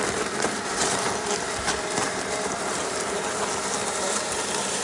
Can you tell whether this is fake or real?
fake